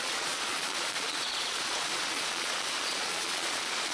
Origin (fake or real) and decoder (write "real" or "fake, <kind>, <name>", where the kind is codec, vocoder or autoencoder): fake, vocoder, Vocos